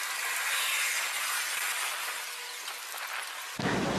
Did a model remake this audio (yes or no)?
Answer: no